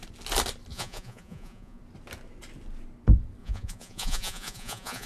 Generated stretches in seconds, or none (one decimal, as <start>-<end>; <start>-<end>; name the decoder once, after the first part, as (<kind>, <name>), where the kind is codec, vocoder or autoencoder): 0.7-1.8 (vocoder, Vocos); 3.4-5.1